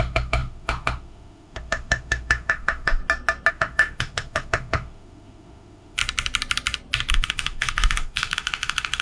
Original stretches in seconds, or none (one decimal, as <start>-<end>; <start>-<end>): 3.0-3.5; 6.0-7.1